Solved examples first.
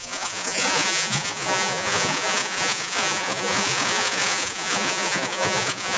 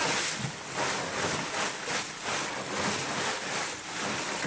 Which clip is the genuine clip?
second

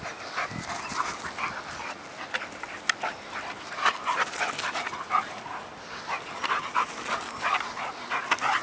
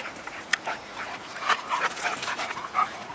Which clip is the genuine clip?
first